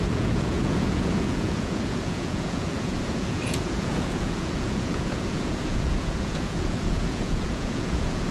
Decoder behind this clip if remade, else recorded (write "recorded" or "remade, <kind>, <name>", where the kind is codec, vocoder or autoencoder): remade, vocoder, Vocos